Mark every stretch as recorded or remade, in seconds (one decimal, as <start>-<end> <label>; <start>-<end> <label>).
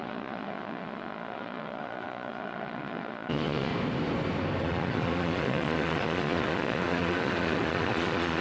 0.0-3.7 remade; 3.7-4.6 recorded; 4.6-8.4 remade